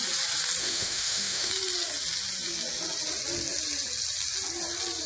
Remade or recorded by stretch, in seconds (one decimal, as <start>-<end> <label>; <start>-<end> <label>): 0.0-0.6 recorded; 0.6-1.5 remade; 1.5-5.1 recorded